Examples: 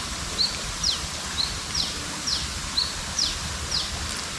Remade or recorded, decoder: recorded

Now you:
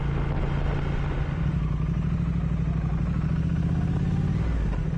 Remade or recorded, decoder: recorded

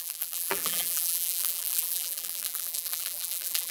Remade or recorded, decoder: remade, vocoder, BigVGAN v2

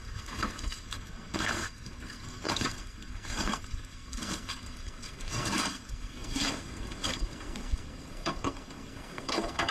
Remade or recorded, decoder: remade, codec, SNAC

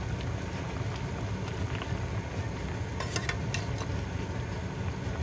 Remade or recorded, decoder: recorded